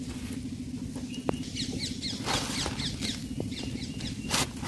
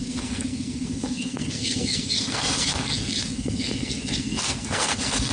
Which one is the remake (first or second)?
second